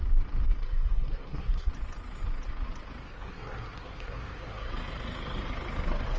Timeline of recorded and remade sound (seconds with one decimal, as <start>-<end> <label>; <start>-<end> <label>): 0.0-0.6 recorded; 0.6-1.7 remade; 1.7-3.0 recorded; 3.0-4.7 remade; 4.7-6.2 recorded